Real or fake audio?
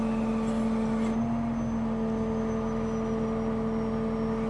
real